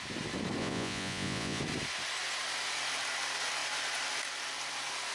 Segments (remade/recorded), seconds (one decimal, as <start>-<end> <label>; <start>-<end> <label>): 0.0-0.6 recorded; 0.6-1.6 remade; 1.6-5.1 recorded